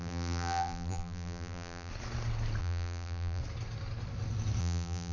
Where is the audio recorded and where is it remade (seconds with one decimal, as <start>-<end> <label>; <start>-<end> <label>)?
0.0-1.9 remade; 1.9-2.6 recorded; 2.6-3.4 remade; 3.4-4.6 recorded; 4.6-5.1 remade